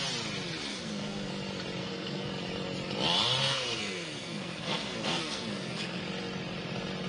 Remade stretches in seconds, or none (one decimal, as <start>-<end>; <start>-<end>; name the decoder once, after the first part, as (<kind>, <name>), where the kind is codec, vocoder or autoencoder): 0.7-1.3 (codec, SNAC); 1.8-2.3; 3.4-6.0

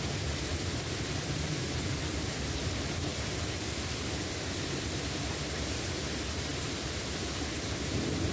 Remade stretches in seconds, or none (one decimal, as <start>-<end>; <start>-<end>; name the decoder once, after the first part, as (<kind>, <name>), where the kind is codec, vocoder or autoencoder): 0.5-2.3 (vocoder, BigVGAN v2); 3.1-5.0; 6.5-8.3

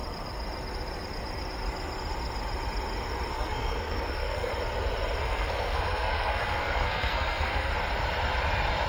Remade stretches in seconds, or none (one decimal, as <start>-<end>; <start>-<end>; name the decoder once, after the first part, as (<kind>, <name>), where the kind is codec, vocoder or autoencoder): 3.3-4.5 (codec, SNAC); 5.2-7.7

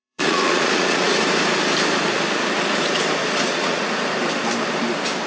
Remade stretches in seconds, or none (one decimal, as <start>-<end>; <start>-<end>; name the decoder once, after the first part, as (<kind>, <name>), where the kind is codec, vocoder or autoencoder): 0.0-1.2 (vocoder, Vocos); 3.2-3.9